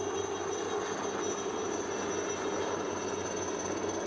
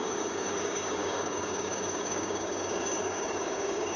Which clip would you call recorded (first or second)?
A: first